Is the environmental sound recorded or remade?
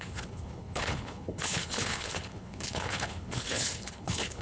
remade